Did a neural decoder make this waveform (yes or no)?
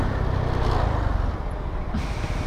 no